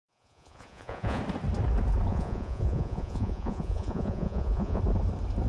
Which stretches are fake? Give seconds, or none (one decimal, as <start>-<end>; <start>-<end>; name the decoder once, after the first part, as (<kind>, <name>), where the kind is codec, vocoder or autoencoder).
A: 0.0-1.2 (vocoder, Vocos); 2.1-4.8